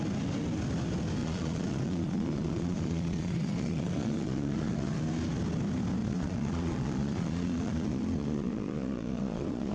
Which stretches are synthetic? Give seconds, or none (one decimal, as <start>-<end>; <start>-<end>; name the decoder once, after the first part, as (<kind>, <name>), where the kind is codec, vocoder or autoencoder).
1.2-5.0 (vocoder, Vocos); 6.0-9.7